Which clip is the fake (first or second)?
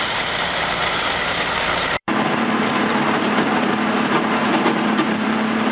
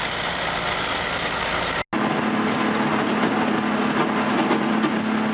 first